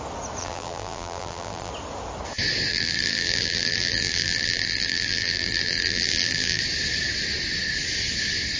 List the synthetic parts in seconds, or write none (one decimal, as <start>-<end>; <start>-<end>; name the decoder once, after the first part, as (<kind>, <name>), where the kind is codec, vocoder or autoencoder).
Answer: 0.4-1.7 (vocoder, BigVGAN v2); 2.7-6.6